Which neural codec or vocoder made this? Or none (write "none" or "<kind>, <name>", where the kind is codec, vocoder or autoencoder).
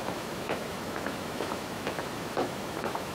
autoencoder, DAC-VAE